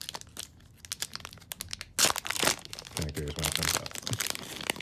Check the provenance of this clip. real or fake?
real